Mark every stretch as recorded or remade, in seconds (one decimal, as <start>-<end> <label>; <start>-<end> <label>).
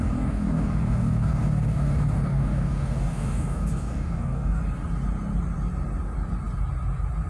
0.0-4.6 remade; 4.6-7.3 recorded